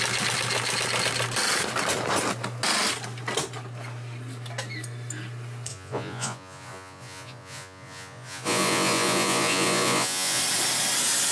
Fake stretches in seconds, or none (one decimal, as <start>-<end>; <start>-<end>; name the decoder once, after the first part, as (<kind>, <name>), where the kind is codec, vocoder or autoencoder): 5.7-10.4 (vocoder, Vocos)